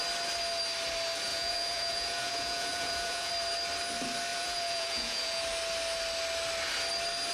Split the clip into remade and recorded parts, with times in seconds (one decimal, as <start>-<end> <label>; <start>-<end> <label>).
0.0-1.3 recorded; 1.3-3.3 remade; 3.3-4.3 recorded; 4.3-5.4 remade; 5.4-7.3 recorded